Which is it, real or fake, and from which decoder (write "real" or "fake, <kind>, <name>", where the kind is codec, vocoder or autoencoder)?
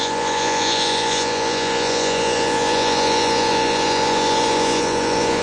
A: fake, vocoder, Vocos